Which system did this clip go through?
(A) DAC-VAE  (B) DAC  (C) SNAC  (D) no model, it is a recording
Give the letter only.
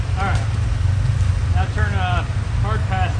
D